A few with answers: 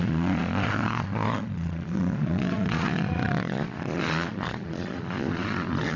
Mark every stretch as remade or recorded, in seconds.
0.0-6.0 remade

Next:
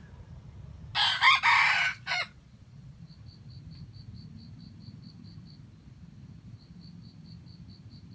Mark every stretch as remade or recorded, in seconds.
0.0-1.9 recorded; 1.9-3.0 remade; 3.0-8.1 recorded